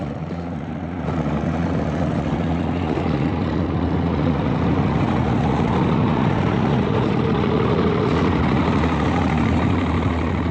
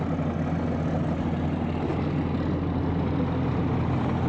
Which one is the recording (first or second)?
second